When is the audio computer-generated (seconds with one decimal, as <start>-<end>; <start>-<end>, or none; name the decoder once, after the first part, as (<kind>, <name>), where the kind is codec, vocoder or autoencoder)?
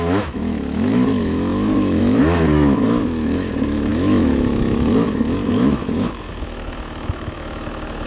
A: 0.0-8.1 (autoencoder, DAC-VAE)